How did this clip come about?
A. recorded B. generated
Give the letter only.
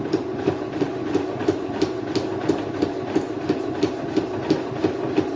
A